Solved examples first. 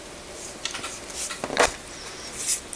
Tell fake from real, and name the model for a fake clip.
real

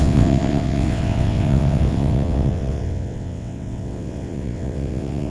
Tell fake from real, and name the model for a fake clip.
fake, vocoder, WaveNeXt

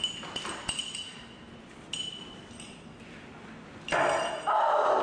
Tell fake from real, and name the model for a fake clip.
real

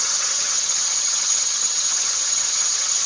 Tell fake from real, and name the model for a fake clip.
fake, vocoder, HiFi-GAN